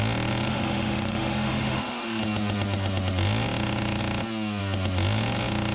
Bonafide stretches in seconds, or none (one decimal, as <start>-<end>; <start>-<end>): 0.0-0.5; 2.2-5.7